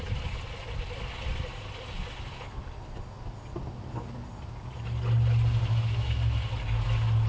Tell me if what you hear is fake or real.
real